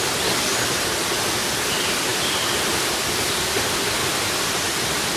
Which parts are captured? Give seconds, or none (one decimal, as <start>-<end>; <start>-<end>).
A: 0.0-2.1; 3.6-4.0